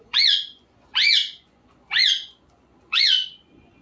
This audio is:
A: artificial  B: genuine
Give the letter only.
A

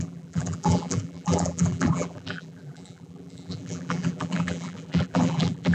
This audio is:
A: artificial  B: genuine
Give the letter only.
A